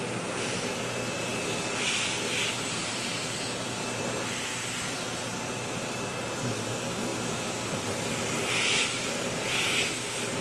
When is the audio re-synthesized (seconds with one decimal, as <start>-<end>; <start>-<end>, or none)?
2.8-4.0; 7.1-8.8